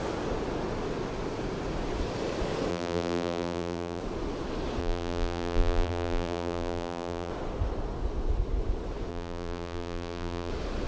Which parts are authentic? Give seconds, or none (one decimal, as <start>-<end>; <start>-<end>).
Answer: 0.0-2.7; 4.0-4.8; 7.3-9.1; 10.5-10.9